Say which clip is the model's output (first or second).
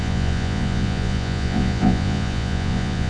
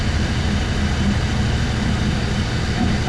first